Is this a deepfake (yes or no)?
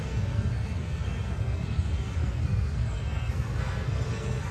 yes